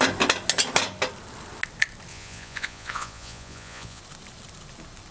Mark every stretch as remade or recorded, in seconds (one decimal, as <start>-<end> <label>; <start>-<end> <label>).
0.0-2.1 recorded; 2.1-4.0 remade; 4.0-5.1 recorded